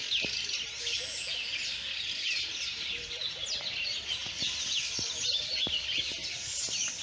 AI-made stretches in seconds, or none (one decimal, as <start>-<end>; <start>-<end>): none